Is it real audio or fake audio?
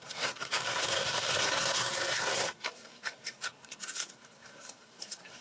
fake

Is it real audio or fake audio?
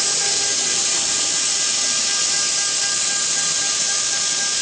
real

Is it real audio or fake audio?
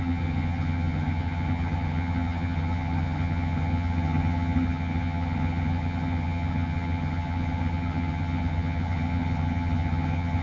fake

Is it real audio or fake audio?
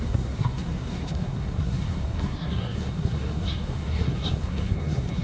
fake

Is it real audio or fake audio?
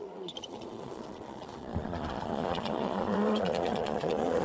fake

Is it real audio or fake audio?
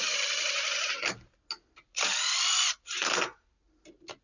real